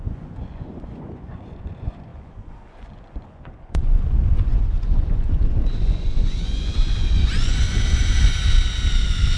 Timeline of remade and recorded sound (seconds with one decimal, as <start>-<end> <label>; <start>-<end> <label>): 0.0-8.3 remade; 8.3-9.0 recorded; 9.0-9.4 remade